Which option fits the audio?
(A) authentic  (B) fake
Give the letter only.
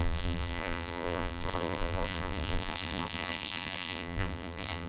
B